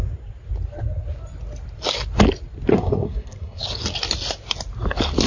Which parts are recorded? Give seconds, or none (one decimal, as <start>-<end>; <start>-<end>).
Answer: 0.0-2.7; 3.6-5.3